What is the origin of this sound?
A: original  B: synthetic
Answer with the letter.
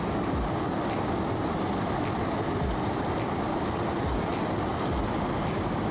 A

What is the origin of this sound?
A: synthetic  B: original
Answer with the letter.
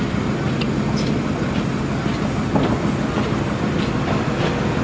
B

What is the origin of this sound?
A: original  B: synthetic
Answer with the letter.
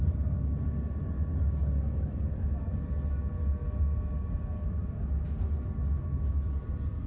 A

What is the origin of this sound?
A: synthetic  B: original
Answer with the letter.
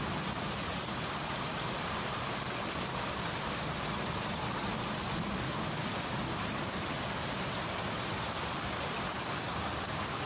B